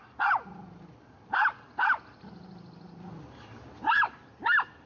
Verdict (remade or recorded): recorded